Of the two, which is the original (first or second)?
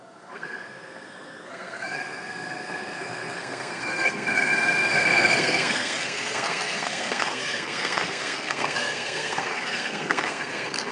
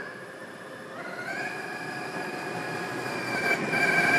second